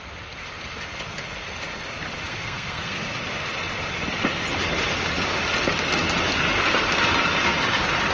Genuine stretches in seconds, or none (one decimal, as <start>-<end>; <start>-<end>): 0.0-2.3; 3.0-8.1